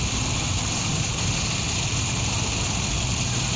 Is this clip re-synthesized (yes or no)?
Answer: no